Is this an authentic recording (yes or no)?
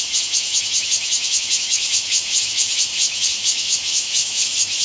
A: no